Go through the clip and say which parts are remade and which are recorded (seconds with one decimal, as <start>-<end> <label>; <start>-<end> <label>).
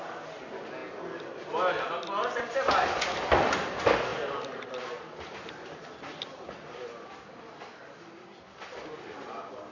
0.0-0.8 recorded; 0.8-1.9 remade; 1.9-4.1 recorded; 4.1-7.1 remade; 7.1-9.7 recorded